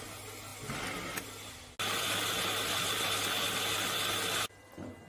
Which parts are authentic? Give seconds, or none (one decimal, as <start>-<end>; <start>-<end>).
0.0-5.1